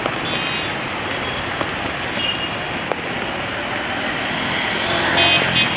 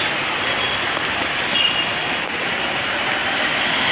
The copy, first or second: second